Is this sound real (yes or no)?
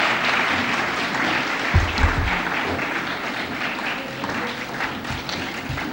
yes